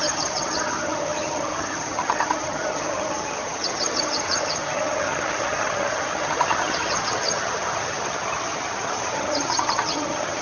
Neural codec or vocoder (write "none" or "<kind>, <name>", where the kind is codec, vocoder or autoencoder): vocoder, HiFi-GAN